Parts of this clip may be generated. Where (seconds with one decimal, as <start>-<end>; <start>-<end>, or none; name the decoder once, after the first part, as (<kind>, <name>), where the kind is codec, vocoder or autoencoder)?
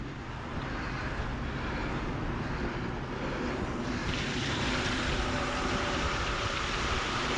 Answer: 0.0-1.3 (vocoder, BigVGAN v2); 3.8-7.4